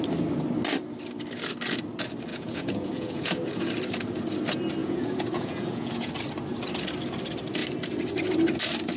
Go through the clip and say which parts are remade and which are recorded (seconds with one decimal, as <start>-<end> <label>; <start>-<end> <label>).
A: 0.0-2.3 recorded; 2.3-3.7 remade; 3.7-4.8 recorded; 4.8-6.1 remade; 6.1-9.0 recorded